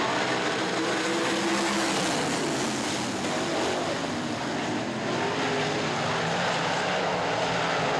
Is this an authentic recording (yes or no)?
yes